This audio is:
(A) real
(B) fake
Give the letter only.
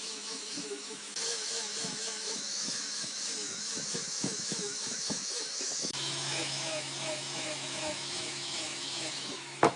B